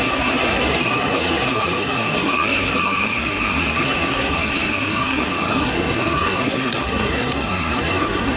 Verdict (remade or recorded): remade